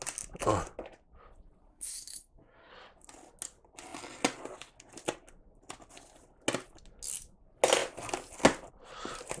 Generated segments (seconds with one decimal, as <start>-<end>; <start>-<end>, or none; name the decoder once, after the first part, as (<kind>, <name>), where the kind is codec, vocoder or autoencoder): 1.7-2.7 (codec, SNAC)